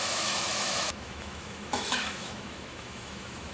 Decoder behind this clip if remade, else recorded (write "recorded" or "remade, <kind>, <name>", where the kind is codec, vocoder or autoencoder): remade, autoencoder, DAC-VAE